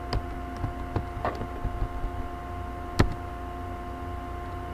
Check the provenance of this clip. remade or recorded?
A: recorded